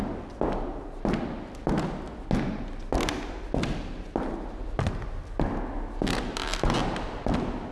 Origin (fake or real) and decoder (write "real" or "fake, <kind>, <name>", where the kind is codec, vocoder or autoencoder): real